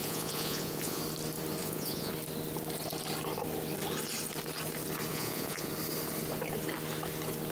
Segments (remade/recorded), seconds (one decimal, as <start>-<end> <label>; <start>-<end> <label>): 0.0-1.0 remade; 1.0-1.6 recorded; 1.6-2.1 remade; 2.1-5.1 recorded; 5.1-5.7 remade; 5.7-7.5 recorded